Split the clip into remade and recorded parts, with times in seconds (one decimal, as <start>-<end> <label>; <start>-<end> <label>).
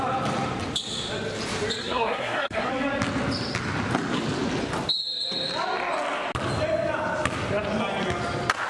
0.0-1.8 recorded; 1.8-2.7 remade; 2.7-8.7 recorded